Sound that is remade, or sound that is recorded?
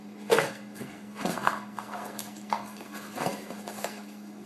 remade